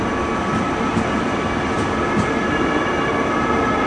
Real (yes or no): yes